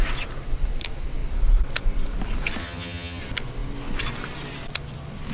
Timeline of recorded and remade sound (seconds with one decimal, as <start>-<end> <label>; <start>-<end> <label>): 0.0-2.6 recorded; 2.6-3.2 remade; 3.2-5.3 recorded